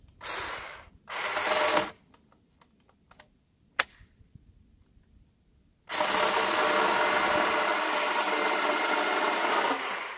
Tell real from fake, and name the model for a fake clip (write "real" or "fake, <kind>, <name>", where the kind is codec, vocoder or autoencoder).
real